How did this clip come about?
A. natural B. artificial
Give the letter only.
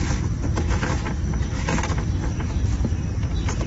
A